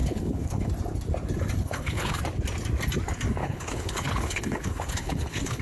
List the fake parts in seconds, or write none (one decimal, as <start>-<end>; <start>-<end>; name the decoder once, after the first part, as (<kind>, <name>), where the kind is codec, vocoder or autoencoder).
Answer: 0.0-0.7 (codec, HILCodec); 1.6-2.2; 3.4-5.6